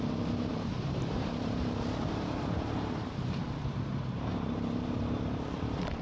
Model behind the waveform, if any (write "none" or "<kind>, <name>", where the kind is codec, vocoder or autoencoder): vocoder, BigVGAN v2